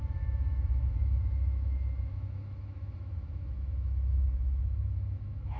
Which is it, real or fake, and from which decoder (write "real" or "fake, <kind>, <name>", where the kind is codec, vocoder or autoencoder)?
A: fake, autoencoder, DAC-VAE